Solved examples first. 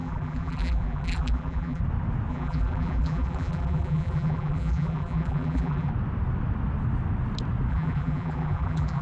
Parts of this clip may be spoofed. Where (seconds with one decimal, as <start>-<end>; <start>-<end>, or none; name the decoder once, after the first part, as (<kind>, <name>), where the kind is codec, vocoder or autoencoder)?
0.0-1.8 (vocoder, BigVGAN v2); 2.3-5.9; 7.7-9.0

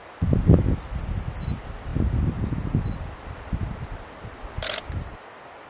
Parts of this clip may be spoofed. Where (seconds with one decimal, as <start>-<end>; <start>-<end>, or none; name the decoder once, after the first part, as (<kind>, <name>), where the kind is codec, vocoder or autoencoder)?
none

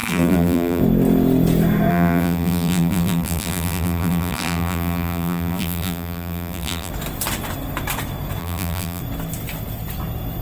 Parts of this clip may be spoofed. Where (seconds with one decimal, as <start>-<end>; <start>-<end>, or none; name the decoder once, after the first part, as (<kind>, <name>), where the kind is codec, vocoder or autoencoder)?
0.0-0.8 (vocoder, BigVGAN v2); 1.9-6.9; 8.4-9.0

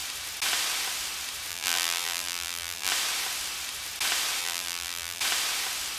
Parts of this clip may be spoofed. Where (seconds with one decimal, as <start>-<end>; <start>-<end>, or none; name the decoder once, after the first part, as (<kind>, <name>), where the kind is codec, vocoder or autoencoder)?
1.5-2.9 (vocoder, BigVGAN v2); 4.4-5.2

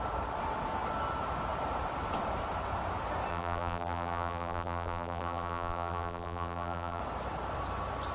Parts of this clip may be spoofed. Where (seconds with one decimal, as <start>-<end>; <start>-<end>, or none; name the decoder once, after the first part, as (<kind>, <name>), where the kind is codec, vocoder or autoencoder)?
3.3-7.0 (vocoder, BigVGAN v2)

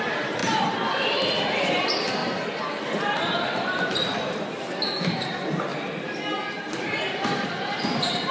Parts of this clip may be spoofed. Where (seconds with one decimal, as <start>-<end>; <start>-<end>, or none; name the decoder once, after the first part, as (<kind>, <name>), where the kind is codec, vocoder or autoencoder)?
0.0-2.2 (vocoder, BigVGAN v2); 4.2-5.7; 6.5-8.3

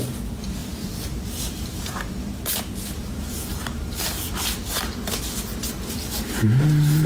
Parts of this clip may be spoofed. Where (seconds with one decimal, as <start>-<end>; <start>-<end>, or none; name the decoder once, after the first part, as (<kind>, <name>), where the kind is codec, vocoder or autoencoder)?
0.6-4.9 (vocoder, BigVGAN v2)